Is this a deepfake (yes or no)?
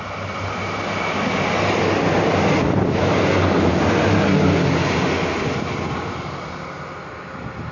no